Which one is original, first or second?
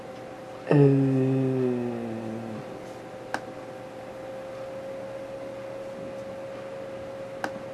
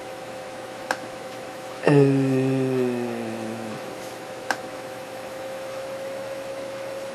first